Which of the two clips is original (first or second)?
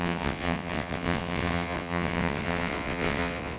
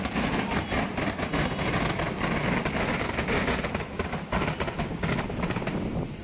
second